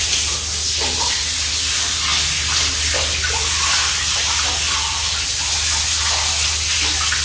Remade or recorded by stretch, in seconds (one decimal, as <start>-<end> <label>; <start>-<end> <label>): 0.0-7.2 recorded